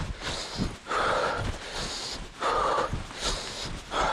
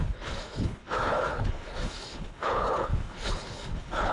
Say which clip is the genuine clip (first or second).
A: first